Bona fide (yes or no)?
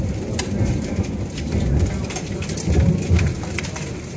yes